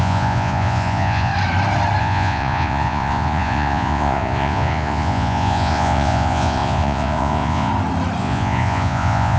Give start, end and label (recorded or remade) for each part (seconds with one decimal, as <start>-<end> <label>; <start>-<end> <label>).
0.0-1.3 remade; 1.3-2.0 recorded; 2.0-7.7 remade; 7.7-8.2 recorded; 8.2-9.4 remade